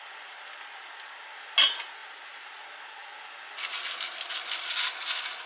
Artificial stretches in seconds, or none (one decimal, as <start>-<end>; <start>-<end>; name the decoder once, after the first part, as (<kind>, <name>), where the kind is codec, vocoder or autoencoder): none